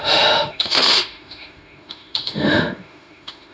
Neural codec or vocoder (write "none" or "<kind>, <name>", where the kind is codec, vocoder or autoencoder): autoencoder, DAC-VAE